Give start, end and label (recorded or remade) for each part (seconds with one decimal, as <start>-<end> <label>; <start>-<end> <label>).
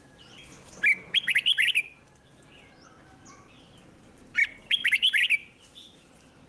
0.0-6.5 recorded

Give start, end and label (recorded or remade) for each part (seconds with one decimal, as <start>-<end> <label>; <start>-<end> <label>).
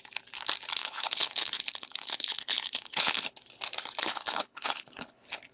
0.0-0.8 recorded; 0.8-3.3 remade; 3.3-4.0 recorded; 4.0-5.5 remade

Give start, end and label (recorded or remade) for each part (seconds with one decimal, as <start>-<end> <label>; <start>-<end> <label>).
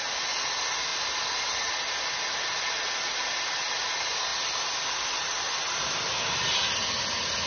0.0-7.5 recorded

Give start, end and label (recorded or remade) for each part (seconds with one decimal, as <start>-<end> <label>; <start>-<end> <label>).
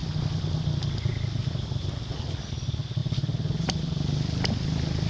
0.0-5.1 recorded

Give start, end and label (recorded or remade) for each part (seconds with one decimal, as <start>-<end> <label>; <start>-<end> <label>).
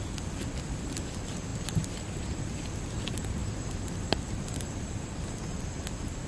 0.0-1.5 remade; 1.5-2.2 recorded; 2.2-6.3 remade